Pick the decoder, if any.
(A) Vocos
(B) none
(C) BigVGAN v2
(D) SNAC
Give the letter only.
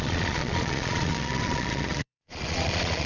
A